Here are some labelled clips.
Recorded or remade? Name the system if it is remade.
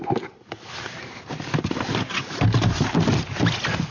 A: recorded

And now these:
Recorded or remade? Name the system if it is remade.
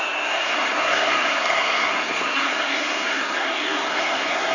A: remade, codec, SNAC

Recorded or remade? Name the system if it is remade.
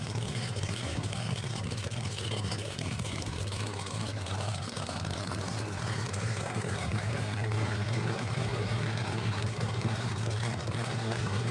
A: remade, codec, SNAC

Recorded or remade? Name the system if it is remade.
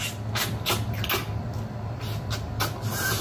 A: recorded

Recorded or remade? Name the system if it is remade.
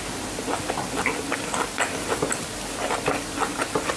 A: recorded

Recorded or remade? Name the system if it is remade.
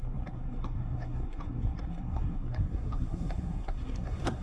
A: remade, codec, SNAC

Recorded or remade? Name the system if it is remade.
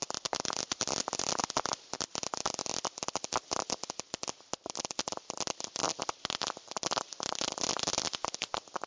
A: recorded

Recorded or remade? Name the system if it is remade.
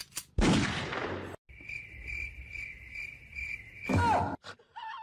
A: recorded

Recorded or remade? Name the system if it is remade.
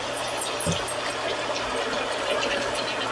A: recorded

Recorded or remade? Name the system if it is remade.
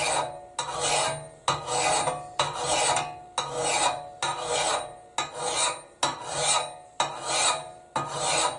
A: recorded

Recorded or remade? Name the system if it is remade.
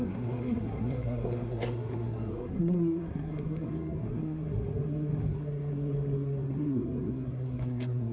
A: remade, codec, SNAC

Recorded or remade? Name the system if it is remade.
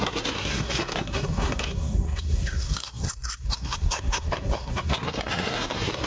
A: remade, codec, SNAC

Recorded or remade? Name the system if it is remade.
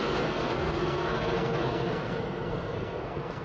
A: remade, codec, SNAC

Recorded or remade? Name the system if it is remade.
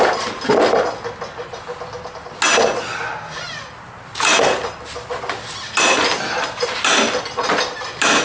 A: recorded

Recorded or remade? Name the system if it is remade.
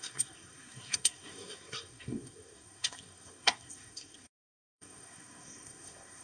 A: remade, codec, SNAC